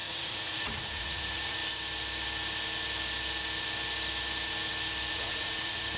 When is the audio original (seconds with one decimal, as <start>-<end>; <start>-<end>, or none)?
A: 1.6-5.1